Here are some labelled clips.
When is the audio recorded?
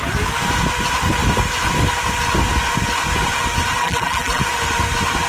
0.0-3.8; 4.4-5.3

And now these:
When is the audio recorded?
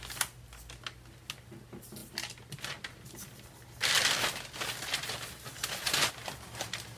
0.0-7.0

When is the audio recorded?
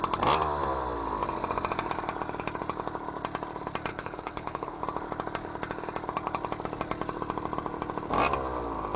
0.0-3.9; 4.8-9.0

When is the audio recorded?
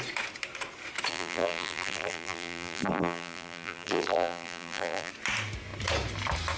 0.0-1.1; 5.1-6.6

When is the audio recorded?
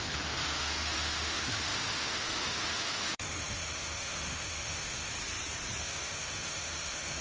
5.1-5.8